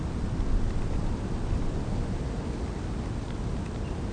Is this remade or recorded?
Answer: recorded